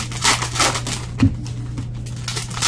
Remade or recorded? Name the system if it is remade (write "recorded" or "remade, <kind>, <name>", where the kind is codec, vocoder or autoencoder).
recorded